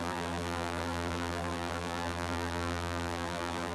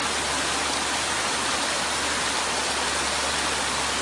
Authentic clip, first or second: second